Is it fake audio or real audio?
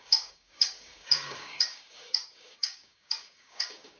fake